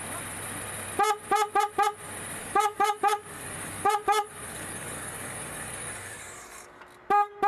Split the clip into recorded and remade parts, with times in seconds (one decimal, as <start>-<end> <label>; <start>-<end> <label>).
0.0-2.4 recorded; 2.4-6.8 remade; 6.8-7.5 recorded